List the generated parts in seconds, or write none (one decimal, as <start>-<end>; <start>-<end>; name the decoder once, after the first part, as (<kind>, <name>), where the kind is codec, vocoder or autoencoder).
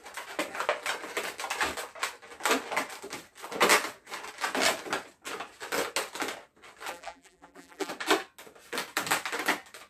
6.9-7.9 (vocoder, BigVGAN v2)